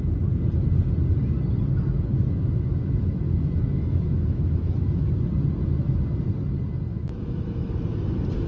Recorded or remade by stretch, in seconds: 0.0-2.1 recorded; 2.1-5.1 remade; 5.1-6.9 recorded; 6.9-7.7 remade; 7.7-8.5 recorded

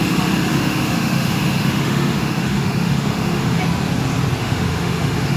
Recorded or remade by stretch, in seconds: 0.0-0.5 recorded; 0.5-3.6 remade; 3.6-4.4 recorded; 4.4-5.4 remade

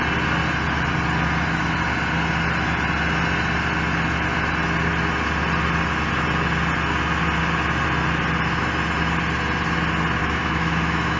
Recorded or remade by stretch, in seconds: 0.0-10.2 recorded; 10.2-11.2 remade

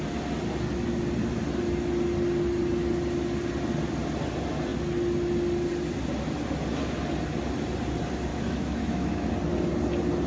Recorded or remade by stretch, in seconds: 0.0-8.3 recorded; 8.3-9.3 remade; 9.3-10.3 recorded

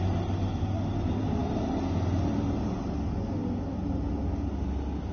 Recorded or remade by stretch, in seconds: 0.0-5.1 recorded

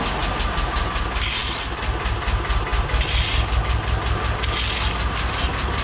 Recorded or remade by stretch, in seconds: 0.0-5.8 recorded

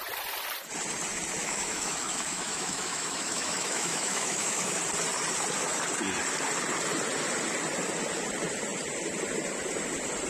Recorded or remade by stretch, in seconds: 0.0-1.4 recorded; 1.4-4.8 remade; 4.8-10.3 recorded